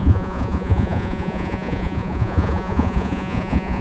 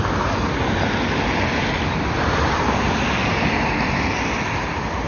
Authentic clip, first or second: second